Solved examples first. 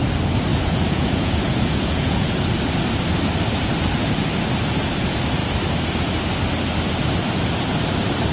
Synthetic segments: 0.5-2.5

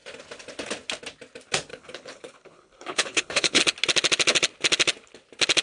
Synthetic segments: 1.7-3.6

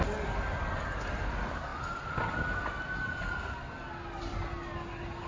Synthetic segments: none

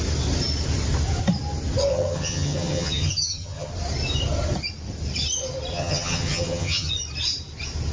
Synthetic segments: 1.9-3.7; 5.7-6.9

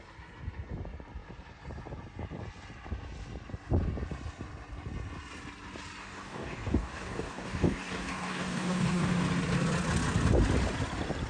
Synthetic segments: 6.0-9.3

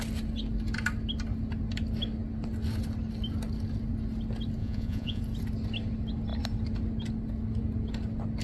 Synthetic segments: 4.6-5.2

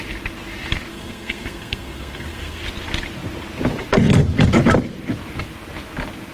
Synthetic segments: 0.9-2.6